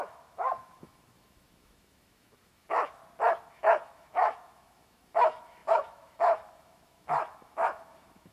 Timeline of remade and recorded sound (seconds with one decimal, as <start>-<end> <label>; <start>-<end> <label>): 0.0-3.0 remade; 3.0-3.5 recorded; 3.5-8.3 remade